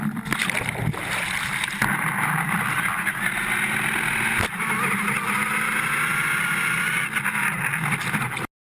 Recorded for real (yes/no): yes